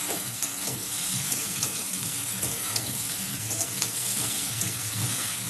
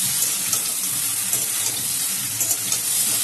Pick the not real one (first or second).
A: first